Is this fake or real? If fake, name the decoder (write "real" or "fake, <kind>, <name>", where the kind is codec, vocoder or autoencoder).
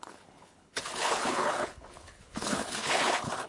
fake, codec, HILCodec